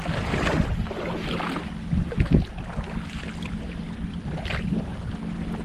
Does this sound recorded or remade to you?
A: recorded